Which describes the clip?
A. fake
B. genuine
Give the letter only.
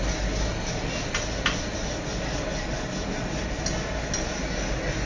B